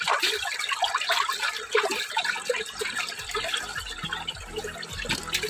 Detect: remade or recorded recorded